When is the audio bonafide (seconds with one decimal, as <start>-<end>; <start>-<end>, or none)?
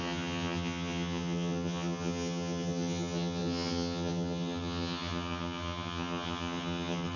none